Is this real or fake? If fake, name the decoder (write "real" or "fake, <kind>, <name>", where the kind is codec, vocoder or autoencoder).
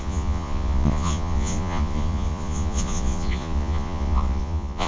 fake, vocoder, Vocos